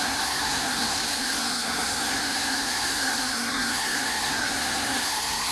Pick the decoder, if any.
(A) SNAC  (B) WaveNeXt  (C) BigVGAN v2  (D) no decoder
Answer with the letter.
A